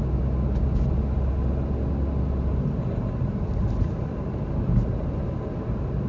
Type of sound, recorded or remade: recorded